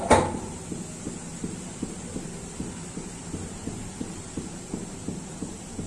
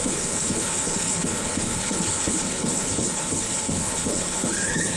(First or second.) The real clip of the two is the first